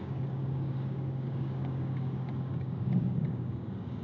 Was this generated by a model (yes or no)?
yes